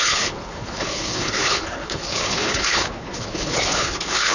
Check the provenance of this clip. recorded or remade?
remade